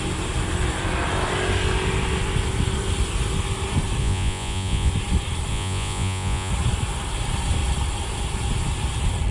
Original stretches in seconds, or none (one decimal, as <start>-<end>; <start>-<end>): 0.0-4.0; 4.9-5.5; 6.5-9.3